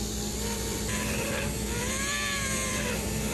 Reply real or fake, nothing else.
fake